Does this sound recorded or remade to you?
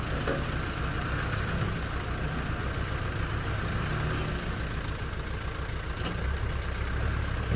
recorded